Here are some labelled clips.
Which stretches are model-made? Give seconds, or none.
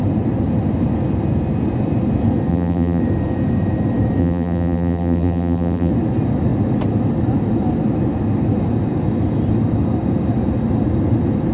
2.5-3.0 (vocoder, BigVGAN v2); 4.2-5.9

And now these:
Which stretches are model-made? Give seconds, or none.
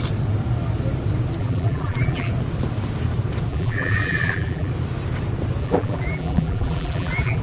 1.4-2.3 (vocoder, BigVGAN v2); 3.5-4.7; 5.6-7.4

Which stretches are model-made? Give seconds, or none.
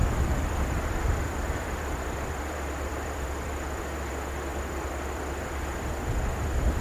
0.0-4.1 (vocoder, BigVGAN v2); 4.5-5.6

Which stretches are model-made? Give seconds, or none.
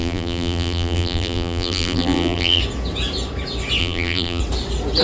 0.0-2.6 (vocoder, BigVGAN v2); 3.8-4.4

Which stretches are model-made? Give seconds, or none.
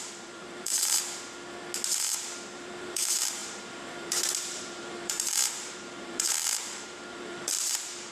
0.0-1.0 (vocoder, BigVGAN v2); 2.5-8.1